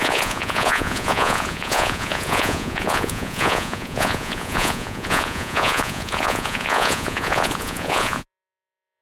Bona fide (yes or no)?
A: no